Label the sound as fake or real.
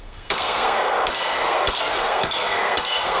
fake